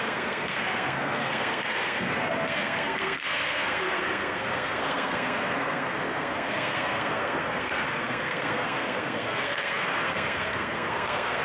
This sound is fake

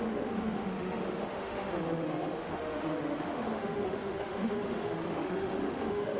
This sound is fake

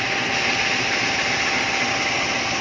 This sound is real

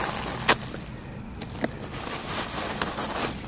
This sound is real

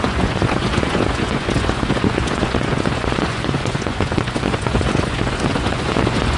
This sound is fake